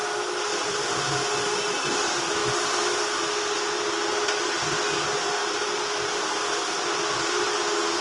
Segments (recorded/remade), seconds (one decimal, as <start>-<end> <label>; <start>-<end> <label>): 0.0-8.0 recorded